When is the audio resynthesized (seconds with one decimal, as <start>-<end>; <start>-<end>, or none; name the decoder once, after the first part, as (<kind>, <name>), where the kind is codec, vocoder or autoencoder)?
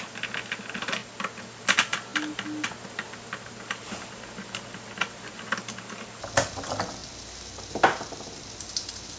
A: none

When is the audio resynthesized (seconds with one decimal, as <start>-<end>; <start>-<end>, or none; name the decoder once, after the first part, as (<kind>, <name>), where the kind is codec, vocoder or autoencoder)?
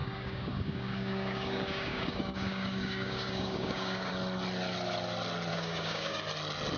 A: 0.0-4.1 (codec, DAC); 5.5-6.2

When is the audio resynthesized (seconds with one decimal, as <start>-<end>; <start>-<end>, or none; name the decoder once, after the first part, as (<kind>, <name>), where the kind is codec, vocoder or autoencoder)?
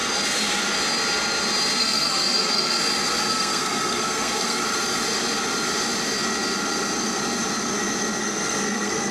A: 1.8-2.8 (codec, SNAC); 3.3-4.6; 8.2-9.1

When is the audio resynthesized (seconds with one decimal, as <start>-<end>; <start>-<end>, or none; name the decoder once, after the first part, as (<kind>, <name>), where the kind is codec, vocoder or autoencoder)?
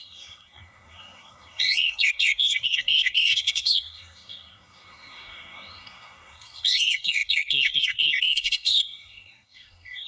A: 0.0-10.1 (codec, SNAC)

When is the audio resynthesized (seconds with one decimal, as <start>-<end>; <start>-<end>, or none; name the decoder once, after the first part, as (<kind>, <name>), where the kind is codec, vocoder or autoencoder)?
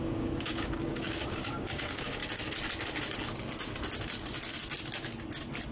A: 0.0-2.2 (codec, DAC)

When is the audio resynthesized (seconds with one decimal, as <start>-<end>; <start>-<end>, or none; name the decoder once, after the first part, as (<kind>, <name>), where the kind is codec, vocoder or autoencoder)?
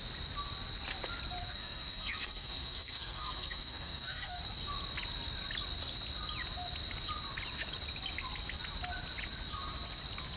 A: 1.4-4.4 (codec, SNAC)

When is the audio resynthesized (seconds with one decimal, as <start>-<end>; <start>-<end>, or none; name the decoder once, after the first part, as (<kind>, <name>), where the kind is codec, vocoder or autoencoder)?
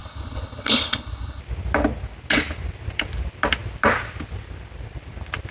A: 0.0-1.4 (codec, HILCodec)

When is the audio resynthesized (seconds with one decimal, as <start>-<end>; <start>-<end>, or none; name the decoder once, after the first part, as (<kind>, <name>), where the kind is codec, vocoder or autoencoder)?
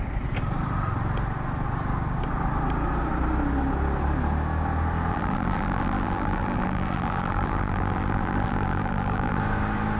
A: 5.1-9.4 (vocoder, BigVGAN v2)